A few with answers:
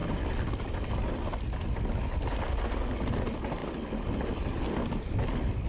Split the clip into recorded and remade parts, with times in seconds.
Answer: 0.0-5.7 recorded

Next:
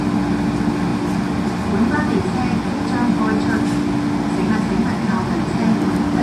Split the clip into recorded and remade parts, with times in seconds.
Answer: 0.0-6.2 recorded

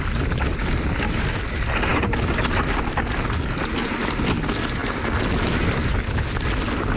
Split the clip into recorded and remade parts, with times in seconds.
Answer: 0.0-7.0 recorded

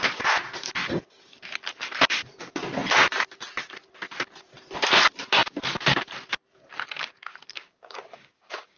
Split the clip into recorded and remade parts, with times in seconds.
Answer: 0.0-7.5 recorded; 7.5-8.8 remade

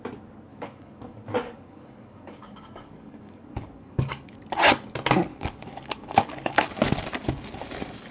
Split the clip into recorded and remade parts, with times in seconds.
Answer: 0.0-0.5 recorded; 0.5-4.4 remade; 4.4-5.3 recorded; 5.3-6.7 remade; 6.7-8.1 recorded

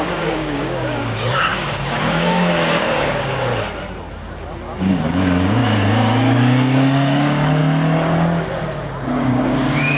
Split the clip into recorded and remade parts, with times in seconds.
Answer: 0.0-3.5 remade; 3.5-4.8 recorded; 4.8-7.6 remade; 7.6-9.0 recorded; 9.0-10.0 remade

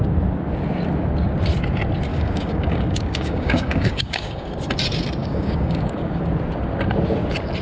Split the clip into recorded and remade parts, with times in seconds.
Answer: 0.0-2.1 recorded; 2.1-4.5 remade; 4.5-5.2 recorded; 5.2-6.2 remade; 6.2-7.6 recorded